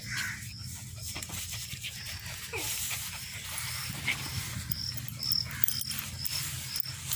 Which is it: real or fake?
real